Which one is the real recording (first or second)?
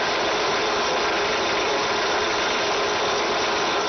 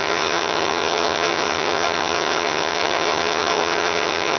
first